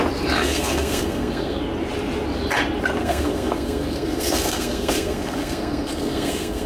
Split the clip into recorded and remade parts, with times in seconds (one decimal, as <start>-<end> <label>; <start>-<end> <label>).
0.0-0.4 recorded; 0.4-1.6 remade; 1.6-3.0 recorded; 3.0-6.7 remade